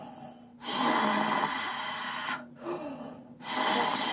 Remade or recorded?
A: recorded